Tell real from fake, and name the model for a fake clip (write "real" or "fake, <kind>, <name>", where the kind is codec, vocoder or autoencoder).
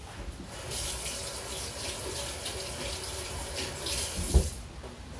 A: real